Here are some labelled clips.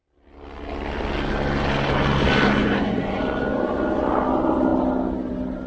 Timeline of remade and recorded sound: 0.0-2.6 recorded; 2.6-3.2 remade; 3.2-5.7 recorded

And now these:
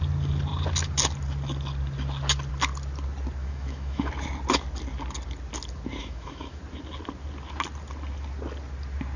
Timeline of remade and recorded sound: 0.0-3.4 recorded; 3.4-4.1 remade; 4.1-6.0 recorded; 6.0-6.6 remade; 6.6-9.2 recorded

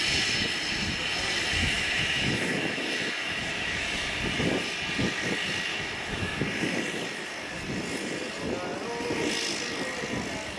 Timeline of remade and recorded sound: 0.0-1.6 recorded; 1.6-4.2 remade; 4.2-5.7 recorded; 5.7-6.4 remade; 6.4-10.6 recorded

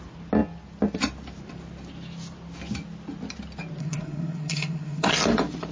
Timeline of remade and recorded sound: 0.0-3.8 recorded; 3.8-5.1 remade; 5.1-5.7 recorded

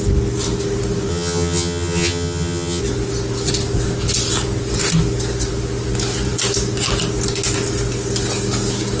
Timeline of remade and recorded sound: 0.0-1.1 recorded; 1.1-2.8 remade; 2.8-9.0 recorded